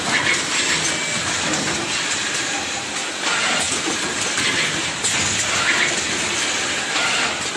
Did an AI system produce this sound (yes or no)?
no